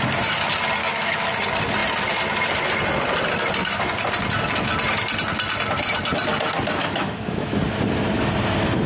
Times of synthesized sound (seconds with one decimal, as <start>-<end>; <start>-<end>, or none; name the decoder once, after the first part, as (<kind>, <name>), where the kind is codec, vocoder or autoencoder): 0.8-1.3 (autoencoder, DAC-VAE); 6.8-7.6